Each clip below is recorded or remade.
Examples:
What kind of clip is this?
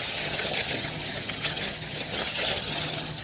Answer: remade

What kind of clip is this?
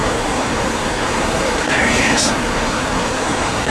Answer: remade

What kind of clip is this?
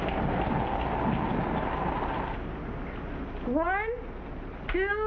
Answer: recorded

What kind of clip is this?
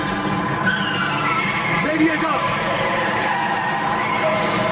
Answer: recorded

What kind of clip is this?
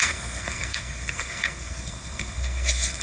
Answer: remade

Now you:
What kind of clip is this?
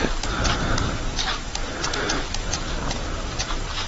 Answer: recorded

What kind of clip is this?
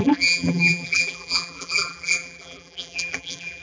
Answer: remade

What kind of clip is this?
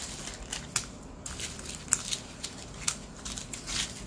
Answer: recorded